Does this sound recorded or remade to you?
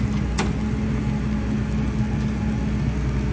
recorded